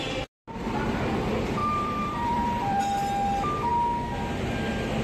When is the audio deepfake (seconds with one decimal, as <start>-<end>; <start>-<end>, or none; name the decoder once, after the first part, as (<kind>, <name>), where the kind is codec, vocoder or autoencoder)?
1.6-2.8 (vocoder, BigVGAN v2)